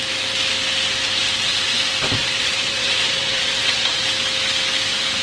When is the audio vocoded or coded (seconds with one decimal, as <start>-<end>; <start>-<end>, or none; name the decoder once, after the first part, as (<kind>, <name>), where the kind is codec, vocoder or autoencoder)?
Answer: 2.2-4.0 (vocoder, Vocos)